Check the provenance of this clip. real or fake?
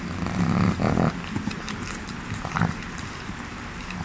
real